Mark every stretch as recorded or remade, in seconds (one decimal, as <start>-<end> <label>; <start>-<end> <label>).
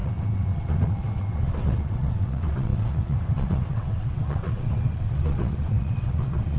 0.0-6.6 remade